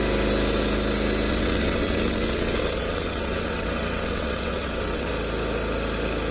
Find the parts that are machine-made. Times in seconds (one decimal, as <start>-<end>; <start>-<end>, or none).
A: 1.3-5.1